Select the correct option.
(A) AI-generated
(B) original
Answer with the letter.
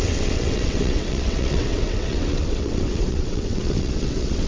A